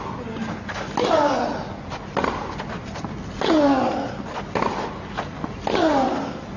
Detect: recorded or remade recorded